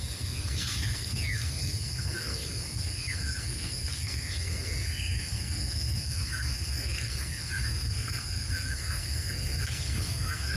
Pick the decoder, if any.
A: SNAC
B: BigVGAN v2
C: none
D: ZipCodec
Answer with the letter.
A